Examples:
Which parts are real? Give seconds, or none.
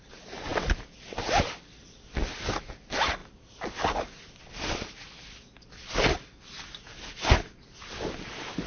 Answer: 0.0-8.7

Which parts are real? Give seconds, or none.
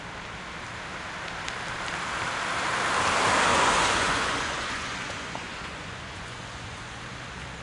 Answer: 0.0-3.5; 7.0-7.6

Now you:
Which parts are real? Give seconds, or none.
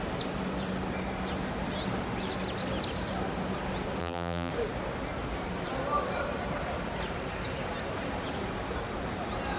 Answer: 0.0-4.0; 4.5-9.6